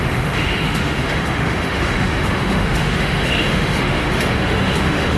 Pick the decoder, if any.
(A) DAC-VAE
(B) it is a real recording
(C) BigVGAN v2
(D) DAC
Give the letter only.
A